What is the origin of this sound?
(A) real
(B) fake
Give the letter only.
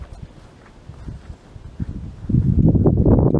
A